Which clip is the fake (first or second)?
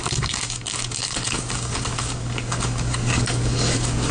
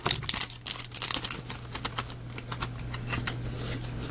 first